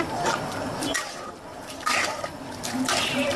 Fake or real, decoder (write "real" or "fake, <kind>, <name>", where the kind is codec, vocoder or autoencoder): fake, vocoder, BigVGAN v2